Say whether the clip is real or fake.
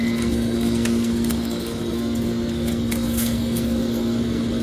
fake